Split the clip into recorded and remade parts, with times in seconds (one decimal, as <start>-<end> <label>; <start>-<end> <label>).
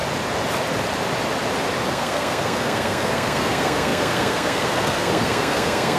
0.0-1.9 recorded; 1.9-6.0 remade